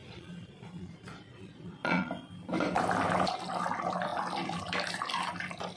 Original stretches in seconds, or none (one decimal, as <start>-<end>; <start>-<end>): 2.1-5.8